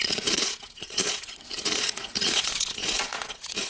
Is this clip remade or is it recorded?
remade